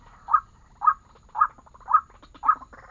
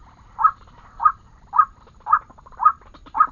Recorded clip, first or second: first